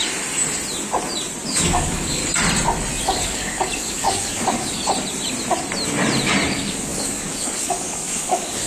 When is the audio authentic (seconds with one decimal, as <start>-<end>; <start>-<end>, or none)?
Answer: 0.0-1.5; 2.2-3.0; 4.8-6.5